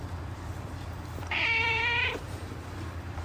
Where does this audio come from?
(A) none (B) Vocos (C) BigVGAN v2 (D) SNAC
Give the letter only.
C